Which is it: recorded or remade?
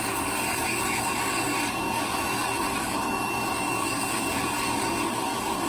remade